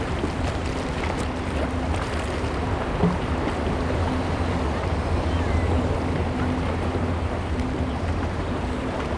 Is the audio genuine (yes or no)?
yes